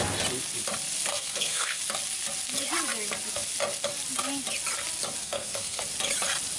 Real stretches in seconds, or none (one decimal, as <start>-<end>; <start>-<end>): 0.0-1.1; 1.8-5.2; 5.8-6.6